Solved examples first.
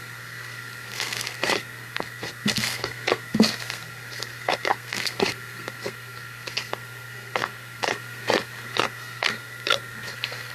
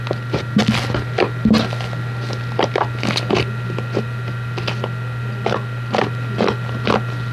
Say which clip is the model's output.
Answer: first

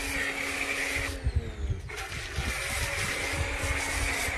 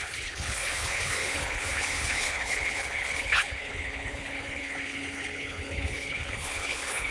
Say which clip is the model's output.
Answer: second